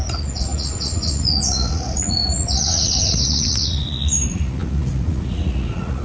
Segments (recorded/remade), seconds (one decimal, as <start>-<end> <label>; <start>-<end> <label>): 0.0-6.0 remade